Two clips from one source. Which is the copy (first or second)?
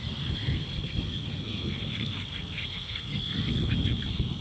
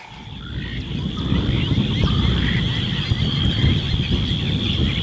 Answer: first